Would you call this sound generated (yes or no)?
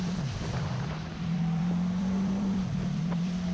yes